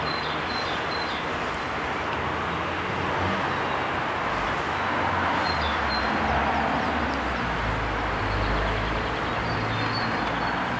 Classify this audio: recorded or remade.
recorded